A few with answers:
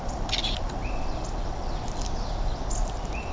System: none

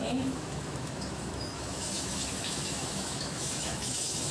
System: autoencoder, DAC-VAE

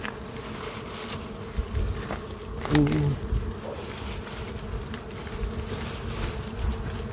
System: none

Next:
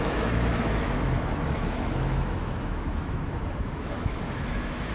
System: autoencoder, DAC-VAE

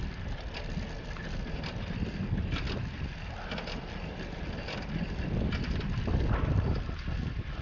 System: none